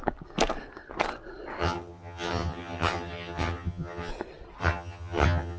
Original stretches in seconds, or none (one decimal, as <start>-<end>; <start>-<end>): 0.0-1.6; 4.1-4.6